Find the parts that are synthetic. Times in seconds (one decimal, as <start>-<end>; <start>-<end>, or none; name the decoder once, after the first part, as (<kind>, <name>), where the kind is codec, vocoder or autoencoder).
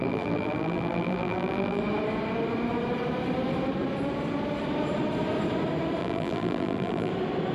0.0-1.8 (vocoder, BigVGAN v2); 6.0-7.1